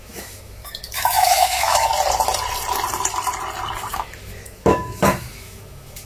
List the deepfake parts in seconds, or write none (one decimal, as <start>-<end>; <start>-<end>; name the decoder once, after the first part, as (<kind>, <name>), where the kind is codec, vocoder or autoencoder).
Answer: 0.0-1.9 (autoencoder, DAC-VAE); 3.9-6.0